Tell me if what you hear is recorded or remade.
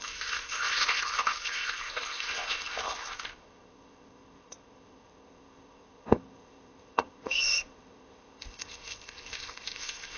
remade